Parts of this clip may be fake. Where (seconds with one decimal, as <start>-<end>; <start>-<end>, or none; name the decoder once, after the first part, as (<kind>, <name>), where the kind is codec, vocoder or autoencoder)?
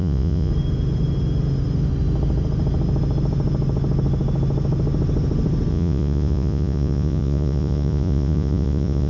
0.0-0.5 (vocoder, Vocos); 5.7-9.1